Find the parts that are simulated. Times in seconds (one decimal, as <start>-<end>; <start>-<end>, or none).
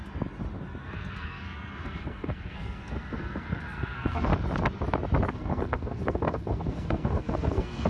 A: 0.8-4.3; 5.3-7.9